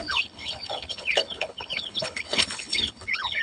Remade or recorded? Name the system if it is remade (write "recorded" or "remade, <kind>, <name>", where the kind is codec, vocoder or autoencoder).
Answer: remade, codec, HILCodec